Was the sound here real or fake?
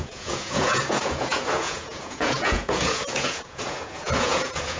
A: fake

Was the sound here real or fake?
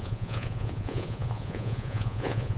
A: fake